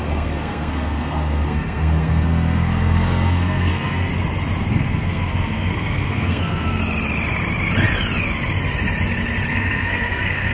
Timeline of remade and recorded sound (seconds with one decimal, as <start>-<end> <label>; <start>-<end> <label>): 0.0-4.1 remade; 4.1-4.7 recorded; 4.7-6.8 remade; 6.8-9.5 recorded; 9.5-10.5 remade

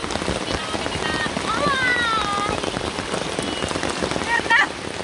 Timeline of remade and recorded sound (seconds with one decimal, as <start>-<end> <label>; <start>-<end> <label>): 0.0-5.0 recorded

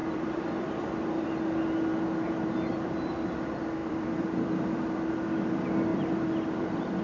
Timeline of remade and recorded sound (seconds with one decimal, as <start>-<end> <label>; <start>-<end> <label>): 0.0-0.8 remade; 0.8-3.8 recorded; 3.8-5.0 remade; 5.0-5.9 recorded; 5.9-7.0 remade